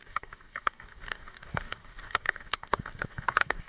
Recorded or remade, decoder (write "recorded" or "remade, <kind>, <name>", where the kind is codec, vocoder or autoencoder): remade, codec, DAC